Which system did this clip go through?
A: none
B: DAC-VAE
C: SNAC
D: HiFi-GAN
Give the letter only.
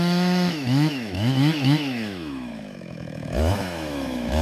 B